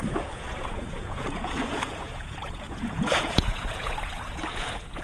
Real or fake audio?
fake